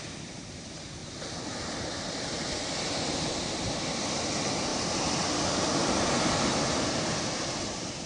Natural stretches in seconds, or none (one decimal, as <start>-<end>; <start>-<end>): 0.0-1.0; 3.3-8.1